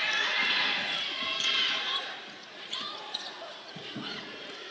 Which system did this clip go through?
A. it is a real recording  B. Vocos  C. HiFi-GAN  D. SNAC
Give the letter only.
B